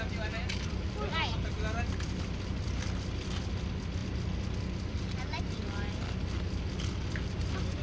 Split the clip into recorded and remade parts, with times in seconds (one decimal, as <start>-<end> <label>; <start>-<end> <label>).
0.0-7.8 recorded